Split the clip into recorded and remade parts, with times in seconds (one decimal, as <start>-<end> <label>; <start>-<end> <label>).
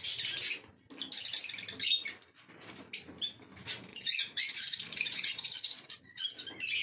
0.0-3.9 recorded; 3.9-6.0 remade; 6.0-6.8 recorded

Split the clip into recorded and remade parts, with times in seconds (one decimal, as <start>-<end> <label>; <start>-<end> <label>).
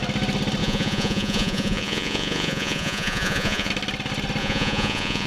0.0-0.6 recorded; 0.6-3.7 remade; 3.7-4.4 recorded; 4.4-5.3 remade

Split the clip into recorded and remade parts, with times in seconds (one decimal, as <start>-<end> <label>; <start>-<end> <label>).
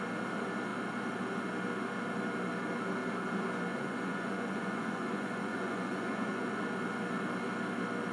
0.0-3.7 recorded; 3.7-6.6 remade; 6.6-8.1 recorded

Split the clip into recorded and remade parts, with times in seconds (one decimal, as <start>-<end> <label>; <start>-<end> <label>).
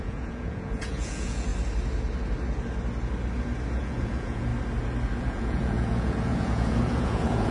0.0-1.5 remade; 1.5-3.7 recorded; 3.7-4.5 remade; 4.5-5.2 recorded; 5.2-7.5 remade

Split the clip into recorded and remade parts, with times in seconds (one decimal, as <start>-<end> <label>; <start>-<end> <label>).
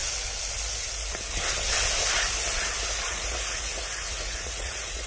0.0-3.1 recorded; 3.1-5.1 remade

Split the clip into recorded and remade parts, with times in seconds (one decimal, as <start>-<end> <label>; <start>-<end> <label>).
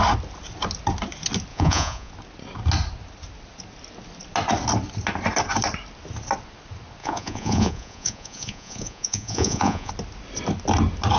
0.0-1.5 recorded; 1.5-2.1 remade; 2.1-7.0 recorded; 7.0-9.9 remade; 9.9-11.2 recorded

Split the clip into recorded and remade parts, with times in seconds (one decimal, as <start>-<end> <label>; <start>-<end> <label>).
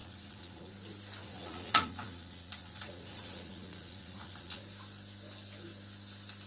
0.0-0.7 remade; 0.7-1.2 recorded; 1.2-4.6 remade; 4.6-6.5 recorded